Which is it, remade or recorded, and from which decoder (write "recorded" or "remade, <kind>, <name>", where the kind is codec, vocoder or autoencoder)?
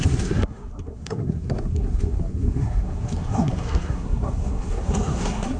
remade, codec, SNAC